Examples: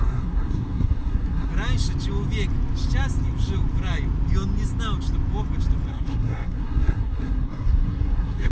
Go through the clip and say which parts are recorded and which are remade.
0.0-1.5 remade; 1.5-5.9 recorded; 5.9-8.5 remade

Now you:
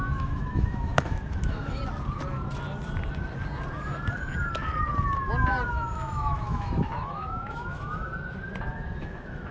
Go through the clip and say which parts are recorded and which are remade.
0.0-1.8 remade; 1.8-5.7 recorded; 5.7-8.1 remade; 8.1-8.7 recorded; 8.7-9.5 remade

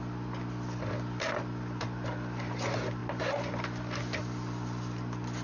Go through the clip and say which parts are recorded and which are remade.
0.0-5.4 recorded

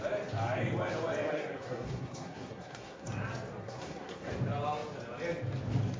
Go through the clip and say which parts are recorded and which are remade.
0.0-1.3 recorded; 1.3-3.1 remade; 3.1-3.6 recorded; 3.6-4.3 remade; 4.3-6.0 recorded

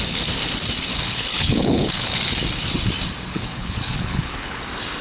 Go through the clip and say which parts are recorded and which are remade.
0.0-0.9 recorded; 0.9-2.2 remade; 2.2-3.3 recorded; 3.3-4.6 remade; 4.6-5.0 recorded